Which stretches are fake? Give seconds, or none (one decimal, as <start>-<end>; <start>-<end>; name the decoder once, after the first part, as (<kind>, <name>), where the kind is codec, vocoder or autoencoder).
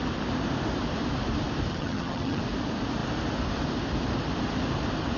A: 1.7-2.4 (vocoder, HiFi-GAN)